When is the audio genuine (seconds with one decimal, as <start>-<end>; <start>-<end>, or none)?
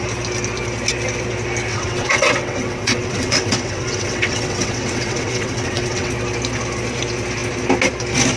0.0-1.7; 6.1-8.4